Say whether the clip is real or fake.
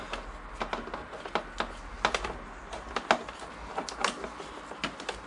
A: real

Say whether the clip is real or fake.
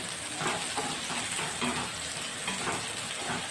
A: real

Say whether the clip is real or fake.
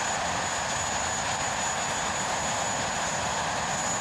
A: real